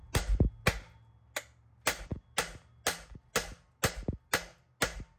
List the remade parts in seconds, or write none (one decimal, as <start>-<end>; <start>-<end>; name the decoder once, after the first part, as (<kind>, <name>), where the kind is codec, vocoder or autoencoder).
none